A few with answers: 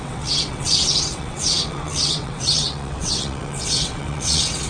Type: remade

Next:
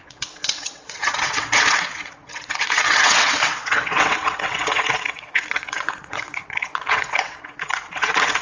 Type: remade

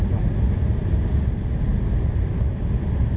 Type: recorded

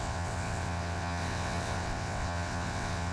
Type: remade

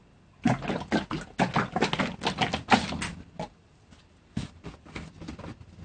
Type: recorded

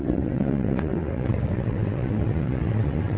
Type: remade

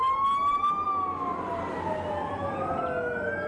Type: recorded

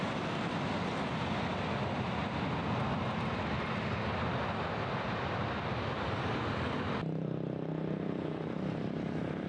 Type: recorded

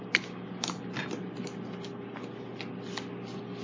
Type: recorded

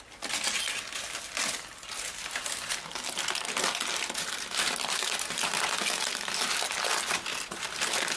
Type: recorded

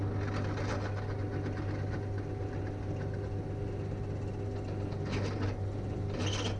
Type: recorded